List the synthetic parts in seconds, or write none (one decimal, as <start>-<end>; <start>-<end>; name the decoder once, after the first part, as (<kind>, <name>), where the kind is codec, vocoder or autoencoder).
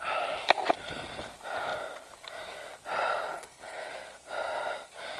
3.3-3.9 (codec, HILCodec)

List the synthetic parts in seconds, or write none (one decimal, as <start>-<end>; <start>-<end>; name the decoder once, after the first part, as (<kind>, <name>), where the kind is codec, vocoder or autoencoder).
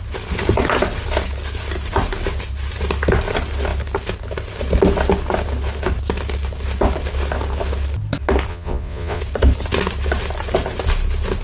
8.5-9.2 (vocoder, Vocos)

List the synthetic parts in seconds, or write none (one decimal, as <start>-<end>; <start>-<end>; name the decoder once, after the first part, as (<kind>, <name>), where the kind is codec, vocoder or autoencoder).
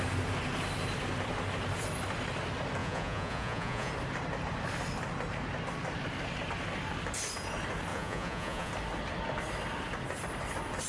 2.8-3.9 (vocoder, Vocos); 7.9-8.7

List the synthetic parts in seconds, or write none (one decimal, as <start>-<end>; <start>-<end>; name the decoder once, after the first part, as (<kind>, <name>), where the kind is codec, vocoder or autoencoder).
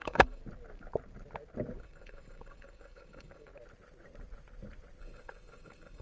0.0-0.4 (codec, DAC); 1.8-3.5; 5.0-6.0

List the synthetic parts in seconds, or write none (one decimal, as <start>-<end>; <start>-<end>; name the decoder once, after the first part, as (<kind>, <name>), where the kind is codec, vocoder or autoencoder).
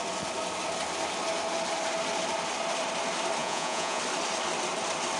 3.4-4.0 (vocoder, Vocos)